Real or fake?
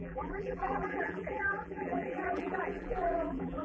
fake